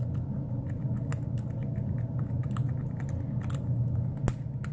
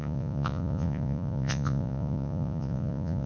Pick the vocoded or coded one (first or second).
second